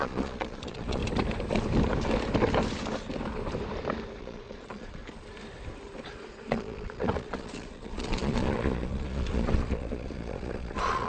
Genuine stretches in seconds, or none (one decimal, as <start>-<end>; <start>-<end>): 1.0-4.2; 5.0-6.3